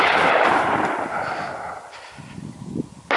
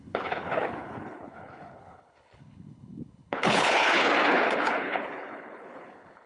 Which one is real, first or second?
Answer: first